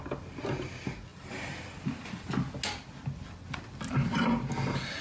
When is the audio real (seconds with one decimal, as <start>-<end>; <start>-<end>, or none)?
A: 0.0-1.1; 2.3-5.0